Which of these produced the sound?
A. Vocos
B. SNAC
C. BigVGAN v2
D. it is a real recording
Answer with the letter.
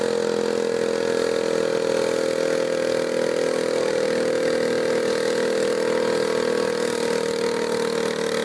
D